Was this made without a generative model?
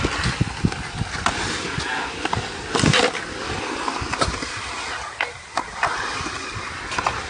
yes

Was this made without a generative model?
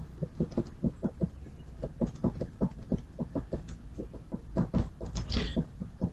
yes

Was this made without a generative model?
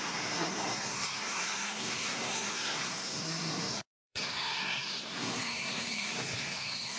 no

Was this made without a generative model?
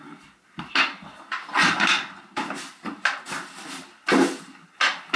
yes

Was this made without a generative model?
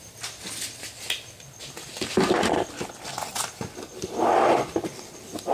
yes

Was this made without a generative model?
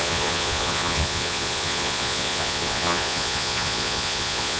no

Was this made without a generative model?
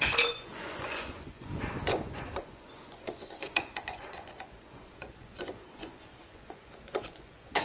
no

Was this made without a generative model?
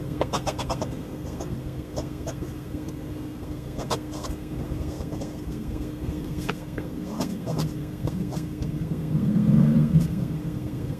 no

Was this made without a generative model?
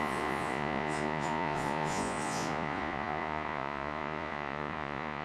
no